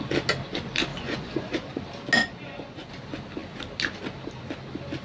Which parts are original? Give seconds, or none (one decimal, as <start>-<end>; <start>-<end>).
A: 0.0-0.9; 1.8-2.2; 2.9-5.0